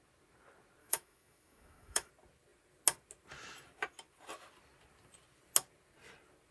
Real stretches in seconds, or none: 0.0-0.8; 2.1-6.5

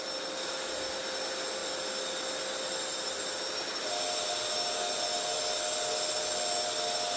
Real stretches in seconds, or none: 0.0-7.2

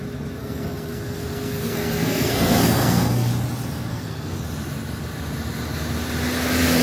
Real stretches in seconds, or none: 0.0-0.4; 3.3-3.9; 4.4-6.8

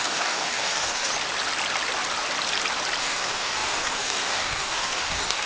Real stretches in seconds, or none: 1.1-3.0

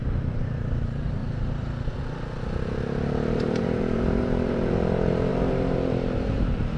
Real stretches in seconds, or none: 1.2-3.3

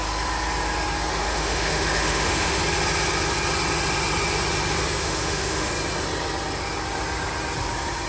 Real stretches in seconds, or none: 0.0-1.1; 2.6-5.0; 5.7-8.1

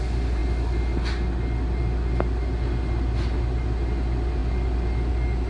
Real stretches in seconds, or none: 0.0-5.5